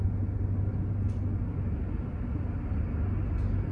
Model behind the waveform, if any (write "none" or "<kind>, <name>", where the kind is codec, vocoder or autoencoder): none